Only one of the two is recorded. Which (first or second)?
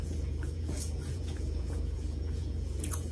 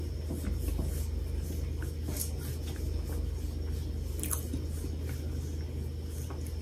second